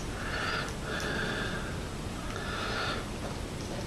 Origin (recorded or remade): recorded